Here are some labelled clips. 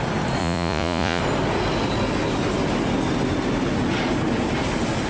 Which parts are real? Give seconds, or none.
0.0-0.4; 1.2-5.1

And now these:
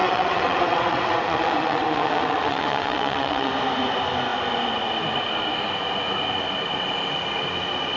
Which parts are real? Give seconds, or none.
3.5-8.0